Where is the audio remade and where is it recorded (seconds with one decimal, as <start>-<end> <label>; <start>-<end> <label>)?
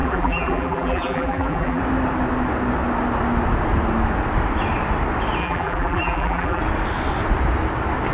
0.0-1.8 remade; 1.8-5.4 recorded; 5.4-6.6 remade; 6.6-8.1 recorded